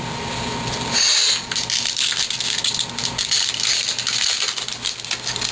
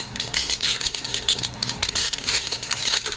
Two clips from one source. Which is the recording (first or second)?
first